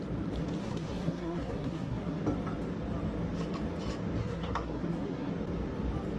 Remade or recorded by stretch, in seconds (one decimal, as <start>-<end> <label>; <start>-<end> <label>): 0.0-0.6 recorded; 0.6-2.2 remade; 2.2-4.2 recorded; 4.2-5.3 remade; 5.3-6.2 recorded